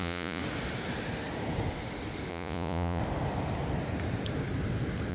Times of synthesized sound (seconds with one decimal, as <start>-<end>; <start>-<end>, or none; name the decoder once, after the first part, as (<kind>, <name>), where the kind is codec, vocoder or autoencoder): 0.0-0.4 (vocoder, Vocos); 2.3-3.0